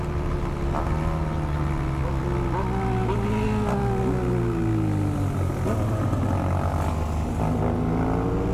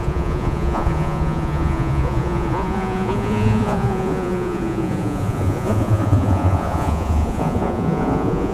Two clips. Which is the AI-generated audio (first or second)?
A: second